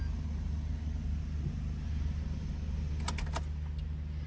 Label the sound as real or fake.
real